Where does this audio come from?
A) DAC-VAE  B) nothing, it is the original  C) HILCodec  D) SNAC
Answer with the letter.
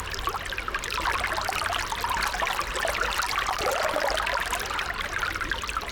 B